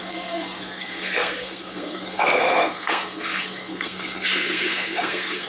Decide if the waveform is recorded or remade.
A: remade